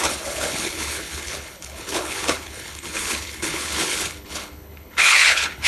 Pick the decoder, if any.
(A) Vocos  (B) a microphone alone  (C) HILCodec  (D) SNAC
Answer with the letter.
C